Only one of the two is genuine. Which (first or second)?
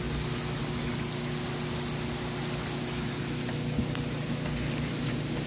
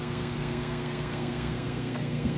first